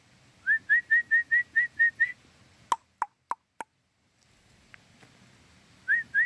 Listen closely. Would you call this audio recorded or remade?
recorded